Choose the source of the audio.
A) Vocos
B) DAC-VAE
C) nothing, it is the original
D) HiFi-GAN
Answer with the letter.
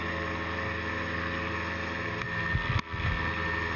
C